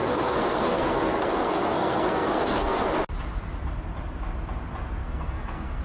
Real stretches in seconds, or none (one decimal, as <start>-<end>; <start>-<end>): 2.9-5.0

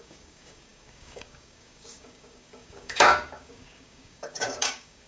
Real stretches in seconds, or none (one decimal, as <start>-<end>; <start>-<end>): none

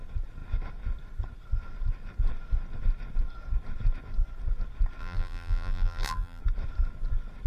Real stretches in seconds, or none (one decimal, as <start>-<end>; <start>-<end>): 0.0-5.0; 6.4-7.5

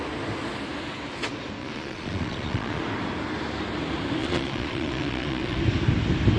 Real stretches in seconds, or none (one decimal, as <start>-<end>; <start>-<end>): 0.0-1.6; 2.8-4.2; 5.6-6.4

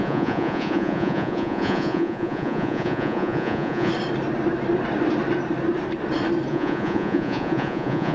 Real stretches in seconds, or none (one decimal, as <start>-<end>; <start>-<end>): 3.9-6.5